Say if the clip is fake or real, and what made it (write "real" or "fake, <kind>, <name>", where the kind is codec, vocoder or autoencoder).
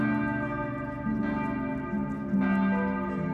real